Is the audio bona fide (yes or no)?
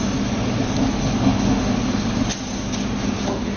yes